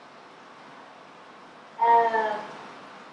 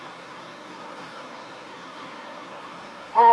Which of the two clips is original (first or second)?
first